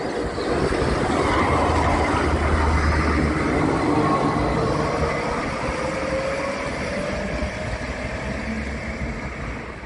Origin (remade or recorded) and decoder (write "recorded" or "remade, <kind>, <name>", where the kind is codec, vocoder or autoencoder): recorded